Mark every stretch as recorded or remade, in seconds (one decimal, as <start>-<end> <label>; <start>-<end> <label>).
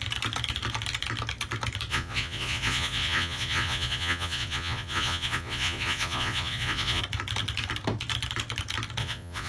0.0-1.9 recorded; 1.9-7.0 remade; 7.0-9.0 recorded; 9.0-9.5 remade